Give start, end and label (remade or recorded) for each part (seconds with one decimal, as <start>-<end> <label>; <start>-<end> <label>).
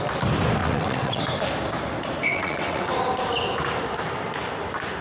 0.0-0.6 recorded; 0.6-1.2 remade; 1.2-2.3 recorded; 2.3-2.9 remade; 2.9-5.0 recorded